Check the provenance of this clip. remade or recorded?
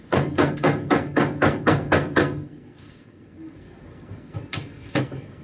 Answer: remade